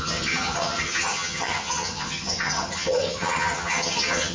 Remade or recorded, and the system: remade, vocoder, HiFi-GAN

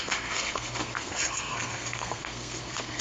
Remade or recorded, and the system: remade, codec, SNAC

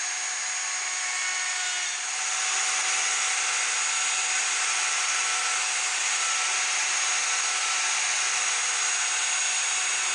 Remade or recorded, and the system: recorded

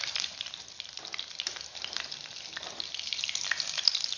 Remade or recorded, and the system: recorded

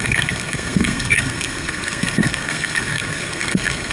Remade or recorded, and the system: remade, codec, SNAC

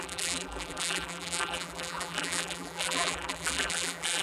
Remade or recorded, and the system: remade, vocoder, BigVGAN v2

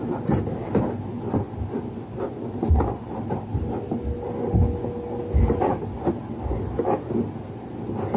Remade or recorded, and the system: recorded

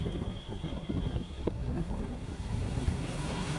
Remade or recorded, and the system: remade, codec, SNAC